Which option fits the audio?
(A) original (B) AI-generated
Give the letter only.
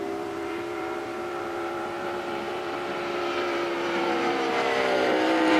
B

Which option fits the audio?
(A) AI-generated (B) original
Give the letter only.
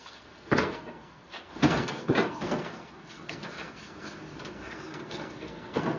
A